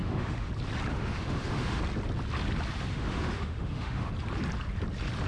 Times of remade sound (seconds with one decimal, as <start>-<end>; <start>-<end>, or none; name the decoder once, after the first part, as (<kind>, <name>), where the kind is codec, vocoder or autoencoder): 0.0-0.5 (autoencoder, DAC-VAE); 0.9-1.8; 2.9-4.1